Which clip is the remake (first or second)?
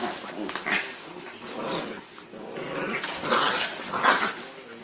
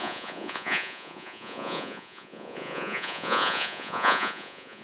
second